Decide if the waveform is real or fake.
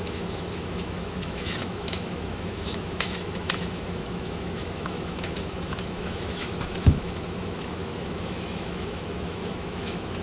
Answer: fake